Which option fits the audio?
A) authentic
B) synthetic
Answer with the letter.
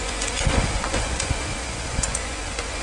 B